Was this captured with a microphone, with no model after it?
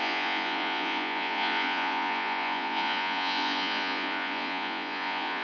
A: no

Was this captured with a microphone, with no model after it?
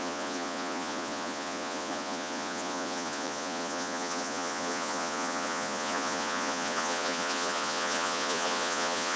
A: no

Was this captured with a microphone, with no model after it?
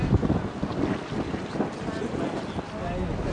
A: yes